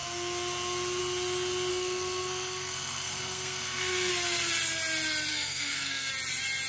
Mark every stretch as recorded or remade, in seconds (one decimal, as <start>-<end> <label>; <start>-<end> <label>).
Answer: 0.0-1.7 recorded; 1.7-4.1 remade; 4.1-5.3 recorded; 5.3-6.1 remade; 6.1-6.7 recorded